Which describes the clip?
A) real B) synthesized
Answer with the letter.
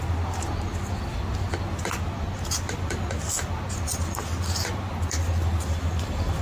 A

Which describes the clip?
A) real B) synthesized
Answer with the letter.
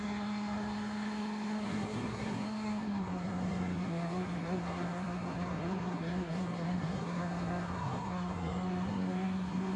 B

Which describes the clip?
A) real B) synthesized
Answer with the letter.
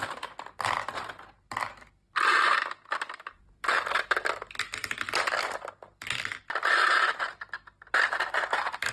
A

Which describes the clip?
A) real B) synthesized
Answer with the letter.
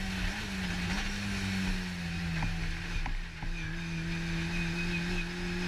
A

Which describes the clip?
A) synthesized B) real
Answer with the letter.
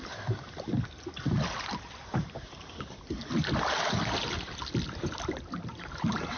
B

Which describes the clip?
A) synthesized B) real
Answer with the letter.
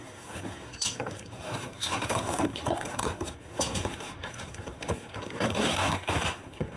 A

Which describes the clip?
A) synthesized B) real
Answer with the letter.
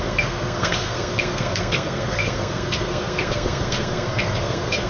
A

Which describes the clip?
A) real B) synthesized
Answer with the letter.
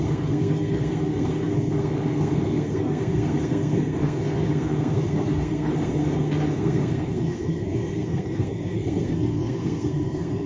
B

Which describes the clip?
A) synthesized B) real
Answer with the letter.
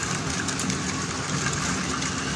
B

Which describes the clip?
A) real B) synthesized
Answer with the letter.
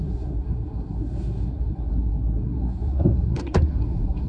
B